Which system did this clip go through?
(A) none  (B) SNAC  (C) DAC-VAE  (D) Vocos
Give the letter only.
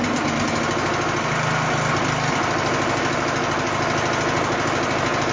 A